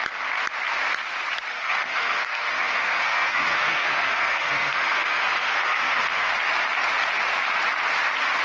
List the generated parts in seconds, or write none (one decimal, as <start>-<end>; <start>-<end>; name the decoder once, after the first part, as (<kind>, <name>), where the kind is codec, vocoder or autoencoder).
1.5-6.3 (codec, SNAC)